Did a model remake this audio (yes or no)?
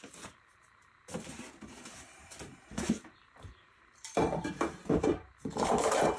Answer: yes